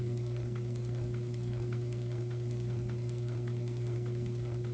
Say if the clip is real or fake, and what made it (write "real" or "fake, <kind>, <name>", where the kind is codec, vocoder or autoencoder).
fake, codec, SNAC